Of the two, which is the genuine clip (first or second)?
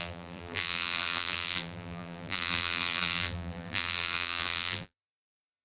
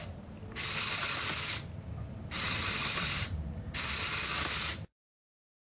second